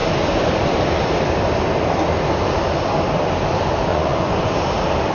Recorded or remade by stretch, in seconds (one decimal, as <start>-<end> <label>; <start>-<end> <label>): 0.0-3.9 recorded; 3.9-4.5 remade; 4.5-5.1 recorded